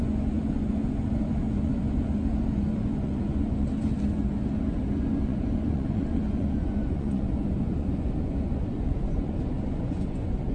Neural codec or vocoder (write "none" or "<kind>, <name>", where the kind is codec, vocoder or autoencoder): vocoder, Vocos